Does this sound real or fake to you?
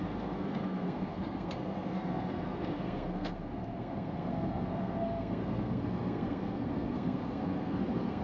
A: fake